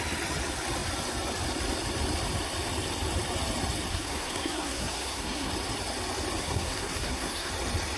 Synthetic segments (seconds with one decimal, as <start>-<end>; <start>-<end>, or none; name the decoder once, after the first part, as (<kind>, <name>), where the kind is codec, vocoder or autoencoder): 3.9-5.5 (codec, SNAC); 6.4-7.5